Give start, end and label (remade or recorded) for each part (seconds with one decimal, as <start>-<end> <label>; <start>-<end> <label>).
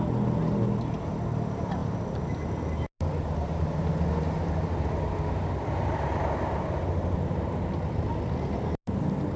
0.0-9.4 recorded